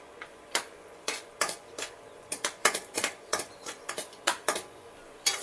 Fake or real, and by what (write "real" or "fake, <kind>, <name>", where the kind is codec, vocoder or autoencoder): fake, vocoder, Vocos